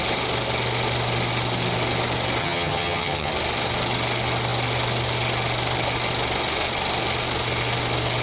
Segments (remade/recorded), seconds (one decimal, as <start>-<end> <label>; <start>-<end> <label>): 0.0-2.4 recorded; 2.4-3.3 remade; 3.3-8.2 recorded